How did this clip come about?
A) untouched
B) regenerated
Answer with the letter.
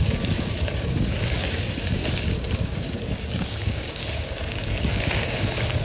B